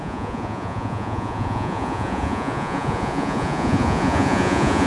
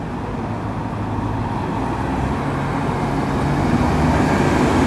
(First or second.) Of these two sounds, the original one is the second